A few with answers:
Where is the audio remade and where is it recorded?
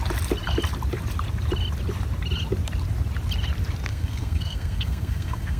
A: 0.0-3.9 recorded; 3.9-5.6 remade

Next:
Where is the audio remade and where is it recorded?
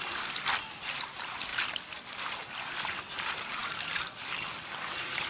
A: 0.0-1.5 remade; 1.5-3.0 recorded; 3.0-3.6 remade; 3.6-4.5 recorded; 4.5-5.3 remade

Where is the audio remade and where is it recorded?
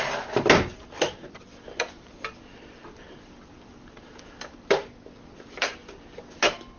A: 0.0-6.8 recorded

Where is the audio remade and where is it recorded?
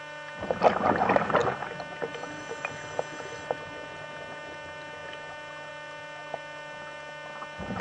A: 0.0-7.8 recorded